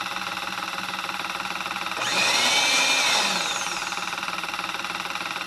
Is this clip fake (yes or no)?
no